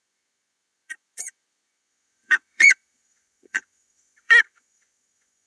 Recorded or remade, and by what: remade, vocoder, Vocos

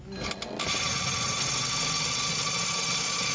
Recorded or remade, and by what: recorded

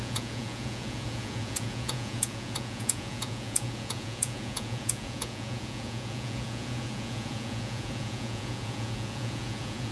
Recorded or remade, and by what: remade, vocoder, Vocos